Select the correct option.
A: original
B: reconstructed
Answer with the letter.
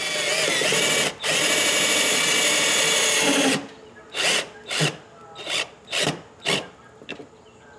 A